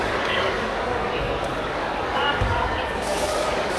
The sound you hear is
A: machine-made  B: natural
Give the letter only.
A